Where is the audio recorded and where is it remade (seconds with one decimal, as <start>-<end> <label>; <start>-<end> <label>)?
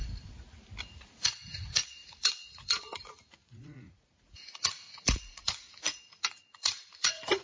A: 0.0-0.8 recorded; 0.8-7.4 remade